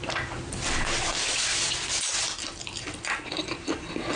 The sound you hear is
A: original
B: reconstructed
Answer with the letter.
A